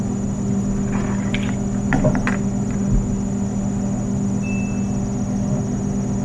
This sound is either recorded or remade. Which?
recorded